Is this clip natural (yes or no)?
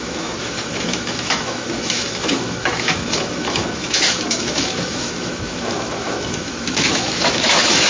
no